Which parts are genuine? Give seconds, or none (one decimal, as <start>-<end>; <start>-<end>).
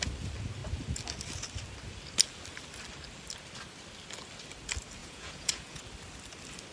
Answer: 0.0-5.0; 5.8-6.7